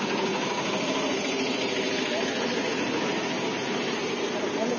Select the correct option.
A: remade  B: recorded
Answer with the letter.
B